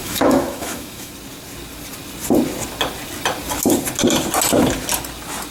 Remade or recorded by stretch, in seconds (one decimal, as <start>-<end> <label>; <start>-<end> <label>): 0.0-1.1 remade; 1.1-5.5 recorded